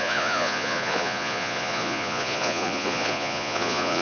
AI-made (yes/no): yes